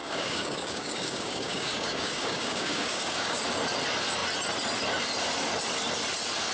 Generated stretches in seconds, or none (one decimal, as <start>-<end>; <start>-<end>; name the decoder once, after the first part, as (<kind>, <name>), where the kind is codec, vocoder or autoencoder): 0.0-3.4 (codec, DAC)